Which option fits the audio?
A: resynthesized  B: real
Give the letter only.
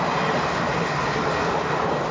B